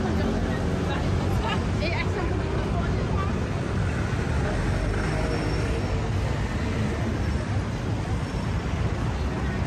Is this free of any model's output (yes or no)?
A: yes